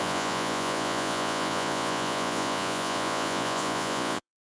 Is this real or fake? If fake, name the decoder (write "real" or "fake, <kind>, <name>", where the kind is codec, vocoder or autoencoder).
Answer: fake, vocoder, Vocos